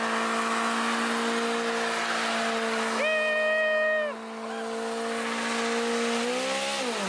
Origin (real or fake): real